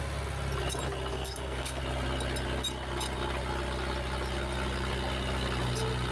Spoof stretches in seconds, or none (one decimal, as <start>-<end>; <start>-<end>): 1.1-1.8